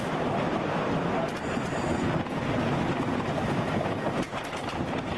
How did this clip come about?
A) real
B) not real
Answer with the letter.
A